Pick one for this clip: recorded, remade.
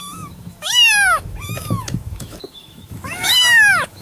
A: remade